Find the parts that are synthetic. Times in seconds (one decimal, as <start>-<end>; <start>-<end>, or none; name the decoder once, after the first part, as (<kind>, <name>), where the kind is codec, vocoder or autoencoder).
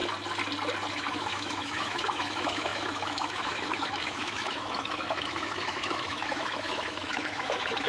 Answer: 0.9-7.9 (autoencoder, DAC-VAE)